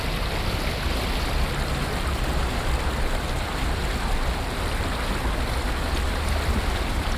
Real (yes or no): yes